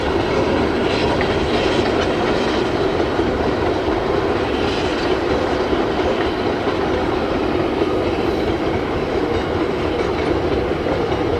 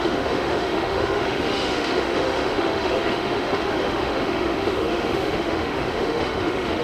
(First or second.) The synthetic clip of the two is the second